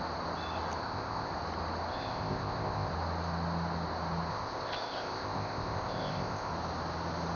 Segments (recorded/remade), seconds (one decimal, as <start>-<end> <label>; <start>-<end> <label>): 0.0-0.8 recorded; 0.8-1.3 remade; 1.3-1.9 recorded; 1.9-2.9 remade; 2.9-4.3 recorded; 4.3-6.5 remade; 6.5-7.4 recorded